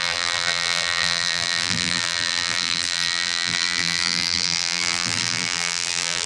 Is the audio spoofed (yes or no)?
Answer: yes